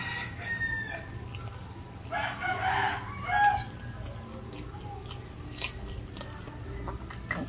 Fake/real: real